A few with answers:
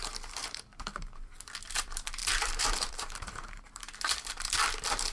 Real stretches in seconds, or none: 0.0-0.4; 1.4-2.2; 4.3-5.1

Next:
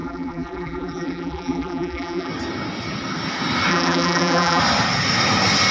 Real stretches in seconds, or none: 2.3-3.7; 4.6-5.7

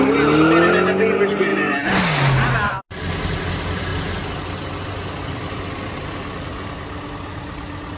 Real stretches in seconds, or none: 0.0-8.0

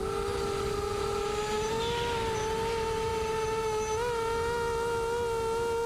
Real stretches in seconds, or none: 0.0-5.9

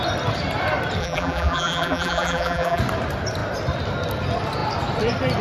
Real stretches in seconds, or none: 0.0-1.0; 2.8-5.4

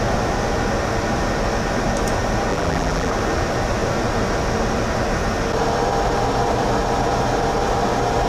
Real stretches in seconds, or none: 0.0-2.5; 3.1-8.3

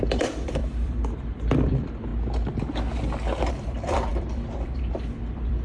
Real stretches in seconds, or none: 2.1-3.5

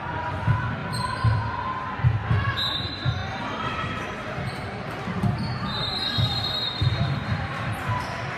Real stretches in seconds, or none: 0.0-0.8; 1.4-3.2; 7.9-8.4